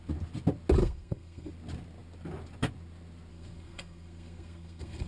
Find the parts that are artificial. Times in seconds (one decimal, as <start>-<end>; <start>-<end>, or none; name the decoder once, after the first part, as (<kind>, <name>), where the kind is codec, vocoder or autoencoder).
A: 0.8-1.5 (codec, SNAC); 3.3-5.1